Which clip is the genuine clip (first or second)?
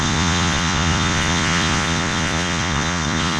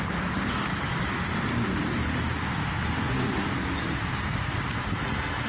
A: second